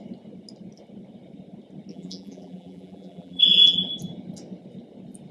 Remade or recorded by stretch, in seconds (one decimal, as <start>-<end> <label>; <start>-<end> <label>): 0.0-1.9 recorded; 1.9-3.9 remade; 3.9-5.3 recorded